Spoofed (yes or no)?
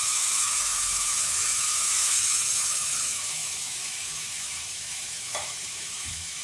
yes